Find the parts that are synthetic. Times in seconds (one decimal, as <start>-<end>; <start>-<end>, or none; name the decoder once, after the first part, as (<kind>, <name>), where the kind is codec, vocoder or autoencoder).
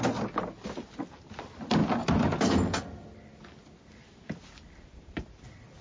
none